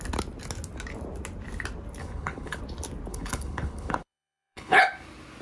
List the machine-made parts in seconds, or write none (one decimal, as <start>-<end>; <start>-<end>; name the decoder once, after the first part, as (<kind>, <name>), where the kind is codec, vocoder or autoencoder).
2.0-2.6 (codec, HILCodec); 3.1-4.8